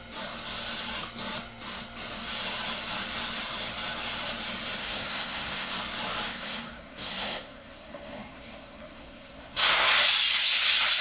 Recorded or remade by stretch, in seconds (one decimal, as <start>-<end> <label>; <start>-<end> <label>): 0.0-4.8 recorded; 4.8-5.7 remade; 5.7-6.3 recorded; 6.3-9.9 remade; 9.9-11.0 recorded